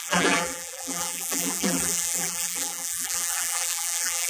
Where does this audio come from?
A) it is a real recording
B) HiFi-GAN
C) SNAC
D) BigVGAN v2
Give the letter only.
D